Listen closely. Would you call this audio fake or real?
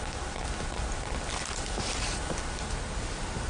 real